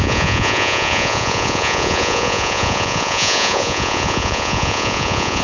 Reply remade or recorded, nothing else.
remade